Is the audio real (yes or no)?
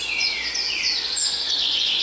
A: no